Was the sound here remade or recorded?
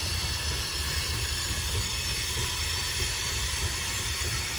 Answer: remade